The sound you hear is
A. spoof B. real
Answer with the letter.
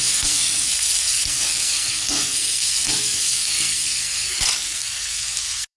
A